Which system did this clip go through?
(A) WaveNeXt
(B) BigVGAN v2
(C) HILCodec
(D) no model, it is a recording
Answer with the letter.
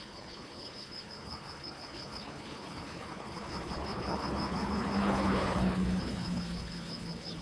C